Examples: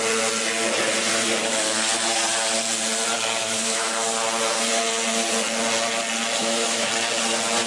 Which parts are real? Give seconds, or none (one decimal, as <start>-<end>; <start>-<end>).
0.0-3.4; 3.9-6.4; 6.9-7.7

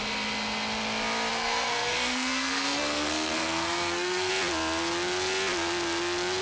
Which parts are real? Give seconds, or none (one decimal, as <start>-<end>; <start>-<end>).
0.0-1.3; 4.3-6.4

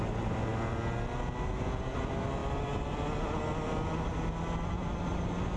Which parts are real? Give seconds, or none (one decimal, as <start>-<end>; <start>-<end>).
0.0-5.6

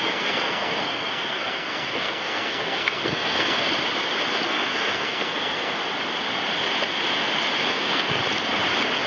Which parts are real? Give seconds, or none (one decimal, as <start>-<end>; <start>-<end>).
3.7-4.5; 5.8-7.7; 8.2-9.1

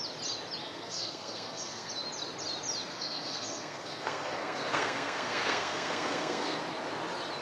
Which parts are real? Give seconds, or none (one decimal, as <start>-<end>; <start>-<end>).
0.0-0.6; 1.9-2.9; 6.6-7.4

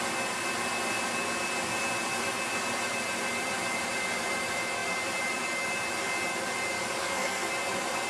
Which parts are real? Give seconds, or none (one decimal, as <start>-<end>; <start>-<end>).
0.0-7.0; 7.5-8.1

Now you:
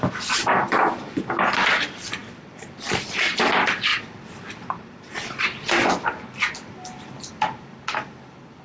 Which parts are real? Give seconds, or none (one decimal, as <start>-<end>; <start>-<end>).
0.0-8.6

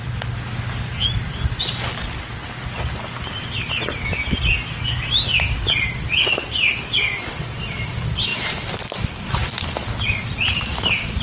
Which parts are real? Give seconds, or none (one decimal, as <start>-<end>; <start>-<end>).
0.0-11.2